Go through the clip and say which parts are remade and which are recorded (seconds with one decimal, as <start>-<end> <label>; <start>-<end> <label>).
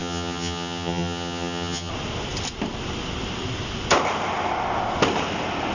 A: 0.0-1.9 remade; 1.9-5.7 recorded